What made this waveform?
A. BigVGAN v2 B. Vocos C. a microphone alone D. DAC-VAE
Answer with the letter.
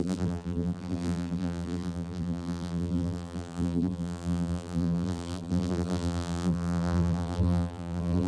A